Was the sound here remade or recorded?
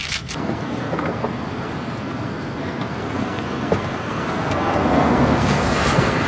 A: remade